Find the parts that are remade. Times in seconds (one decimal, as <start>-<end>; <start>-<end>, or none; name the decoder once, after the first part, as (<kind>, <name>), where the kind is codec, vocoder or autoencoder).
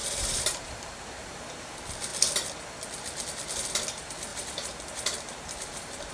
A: 0.0-1.5 (vocoder, BigVGAN v2); 4.3-6.1